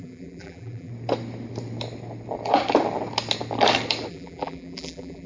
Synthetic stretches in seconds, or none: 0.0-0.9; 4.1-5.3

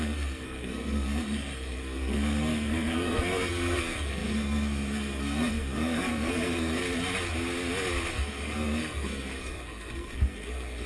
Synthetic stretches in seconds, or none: 0.0-6.8; 8.1-10.9

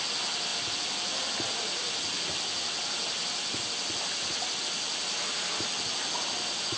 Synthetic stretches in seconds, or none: none

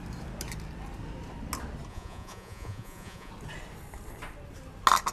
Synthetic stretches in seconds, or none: 1.9-3.3

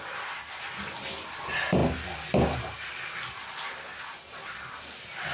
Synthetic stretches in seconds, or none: none